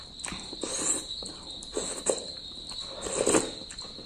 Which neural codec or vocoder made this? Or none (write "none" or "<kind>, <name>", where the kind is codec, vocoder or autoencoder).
none